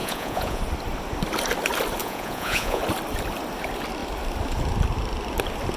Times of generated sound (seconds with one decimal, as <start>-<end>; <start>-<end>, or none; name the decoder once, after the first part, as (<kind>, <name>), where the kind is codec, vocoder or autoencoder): 0.0-0.6 (vocoder, Vocos); 2.0-2.8